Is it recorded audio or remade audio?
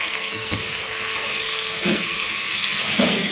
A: remade